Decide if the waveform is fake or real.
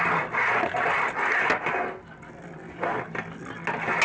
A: real